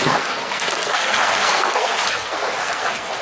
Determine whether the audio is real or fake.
fake